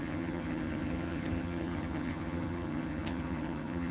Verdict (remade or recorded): remade